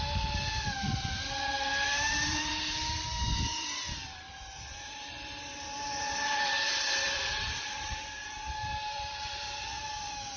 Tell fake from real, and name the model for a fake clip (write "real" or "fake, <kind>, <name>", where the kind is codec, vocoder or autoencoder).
fake, vocoder, BigVGAN v2